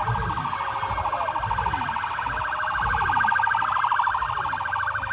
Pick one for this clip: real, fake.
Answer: real